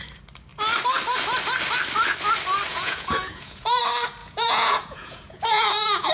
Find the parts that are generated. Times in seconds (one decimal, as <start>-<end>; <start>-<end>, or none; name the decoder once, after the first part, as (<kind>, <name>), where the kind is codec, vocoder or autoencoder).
2.7-3.8 (vocoder, Vocos); 4.2-6.1